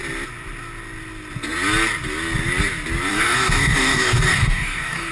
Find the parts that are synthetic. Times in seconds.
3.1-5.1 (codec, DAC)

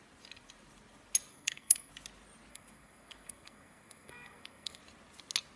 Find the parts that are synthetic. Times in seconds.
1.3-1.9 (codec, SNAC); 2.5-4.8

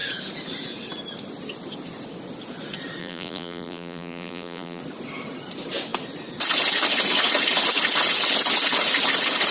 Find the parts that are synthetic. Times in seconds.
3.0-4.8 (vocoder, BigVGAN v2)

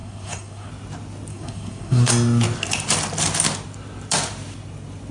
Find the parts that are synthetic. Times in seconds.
0.0-0.7 (codec, SNAC); 1.3-2.1

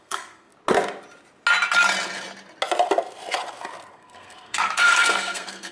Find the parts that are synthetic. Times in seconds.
0.0-0.5 (codec, SNAC); 3.9-5.7